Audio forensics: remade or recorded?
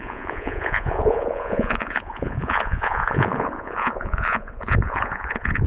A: remade